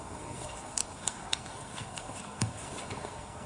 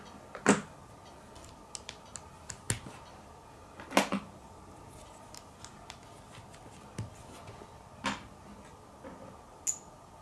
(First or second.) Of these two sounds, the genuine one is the second